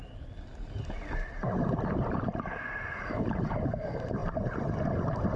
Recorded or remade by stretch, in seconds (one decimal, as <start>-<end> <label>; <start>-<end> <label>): 0.0-5.4 recorded